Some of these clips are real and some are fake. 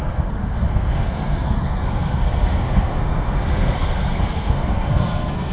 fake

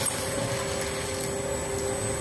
real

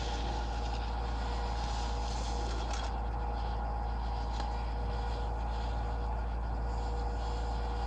real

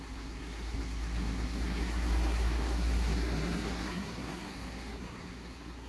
fake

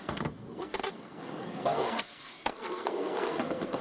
fake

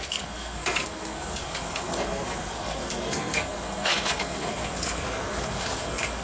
fake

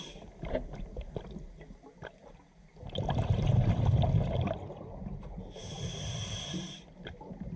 real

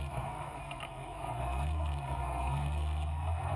fake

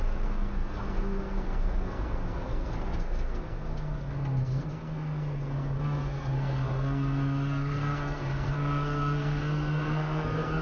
fake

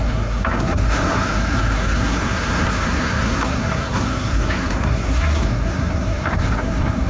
fake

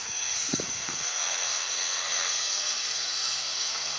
fake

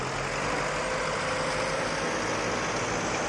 real